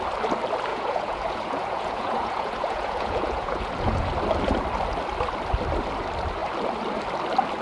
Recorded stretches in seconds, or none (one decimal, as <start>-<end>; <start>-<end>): 0.0-0.7; 4.1-7.6